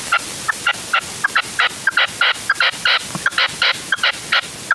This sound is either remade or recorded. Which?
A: recorded